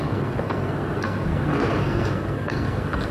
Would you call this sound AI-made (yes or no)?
yes